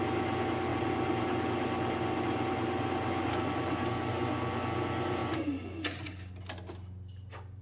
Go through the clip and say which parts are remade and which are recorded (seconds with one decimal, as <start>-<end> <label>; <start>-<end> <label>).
0.0-7.6 recorded